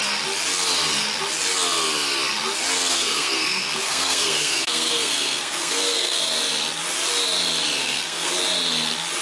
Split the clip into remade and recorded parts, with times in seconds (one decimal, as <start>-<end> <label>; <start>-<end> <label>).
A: 0.0-2.9 recorded; 2.9-6.2 remade; 6.2-7.8 recorded; 7.8-8.3 remade; 8.3-9.2 recorded